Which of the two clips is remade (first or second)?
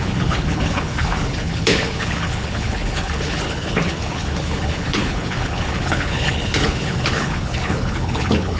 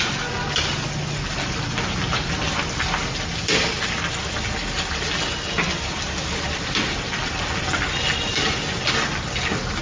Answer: first